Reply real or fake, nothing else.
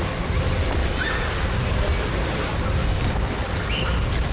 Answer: real